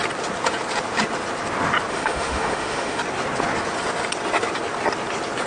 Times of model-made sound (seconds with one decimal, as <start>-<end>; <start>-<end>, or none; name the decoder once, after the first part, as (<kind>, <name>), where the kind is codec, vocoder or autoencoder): 1.9-3.0 (autoencoder, DAC-VAE)